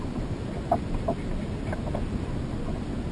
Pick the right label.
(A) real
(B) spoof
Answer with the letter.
A